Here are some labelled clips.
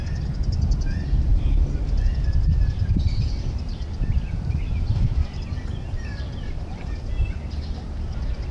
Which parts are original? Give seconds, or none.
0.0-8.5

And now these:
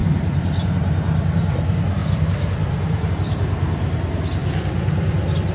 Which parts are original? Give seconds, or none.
0.0-2.0; 3.1-4.4